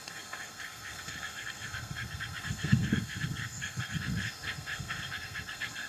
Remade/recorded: remade